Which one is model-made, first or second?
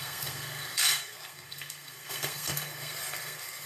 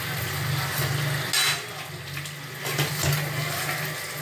first